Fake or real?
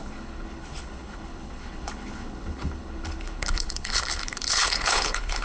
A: fake